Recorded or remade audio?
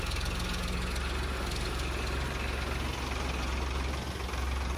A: recorded